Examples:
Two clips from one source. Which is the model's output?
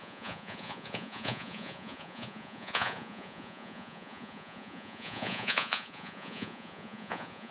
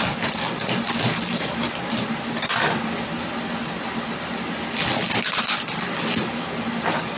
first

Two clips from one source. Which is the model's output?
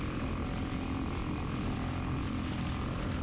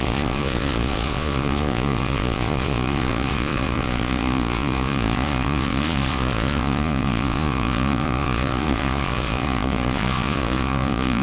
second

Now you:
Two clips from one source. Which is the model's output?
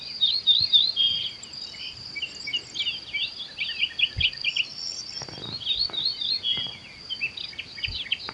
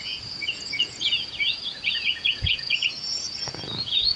second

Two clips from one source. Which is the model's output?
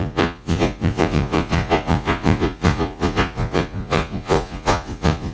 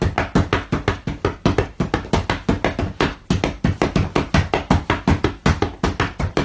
first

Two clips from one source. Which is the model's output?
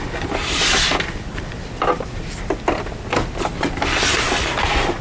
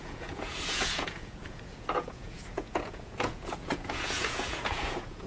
second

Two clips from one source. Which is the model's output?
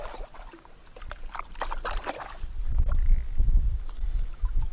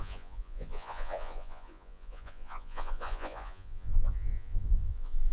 second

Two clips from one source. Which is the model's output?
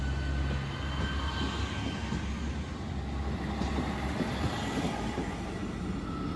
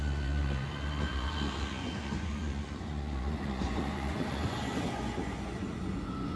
second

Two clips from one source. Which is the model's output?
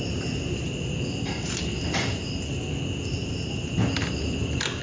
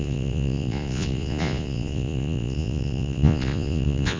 second